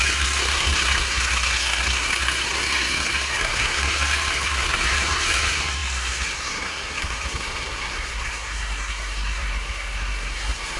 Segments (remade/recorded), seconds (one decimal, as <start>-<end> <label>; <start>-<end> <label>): 0.0-10.8 remade